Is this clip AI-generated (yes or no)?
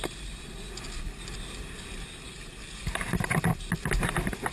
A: no